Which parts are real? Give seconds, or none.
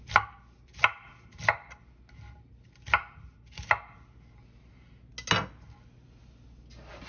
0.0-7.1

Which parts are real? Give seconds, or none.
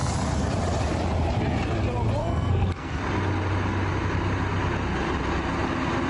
0.0-2.2; 3.0-6.1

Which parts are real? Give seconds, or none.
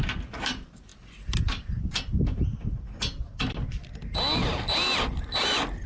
0.0-5.9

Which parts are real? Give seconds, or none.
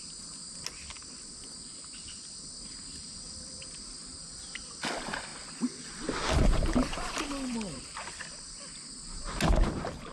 0.0-10.1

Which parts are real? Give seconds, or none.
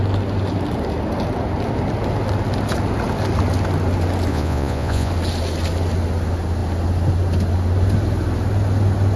0.0-4.3; 5.1-9.2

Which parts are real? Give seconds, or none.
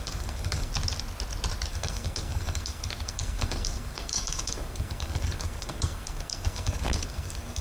0.7-1.7